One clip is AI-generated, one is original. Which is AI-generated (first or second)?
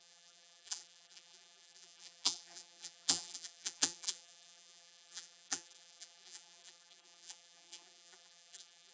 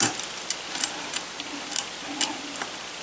first